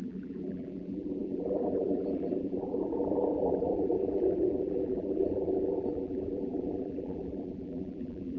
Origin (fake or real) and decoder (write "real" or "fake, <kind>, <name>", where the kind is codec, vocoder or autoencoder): fake, vocoder, BigVGAN v2